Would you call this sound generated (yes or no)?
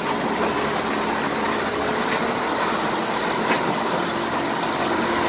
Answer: no